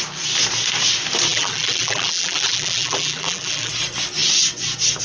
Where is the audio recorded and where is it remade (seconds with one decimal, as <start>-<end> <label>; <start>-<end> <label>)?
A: 0.0-1.3 recorded; 1.3-3.7 remade; 3.7-5.0 recorded